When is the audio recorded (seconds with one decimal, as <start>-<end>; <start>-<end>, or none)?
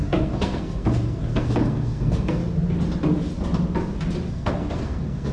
2.4-4.3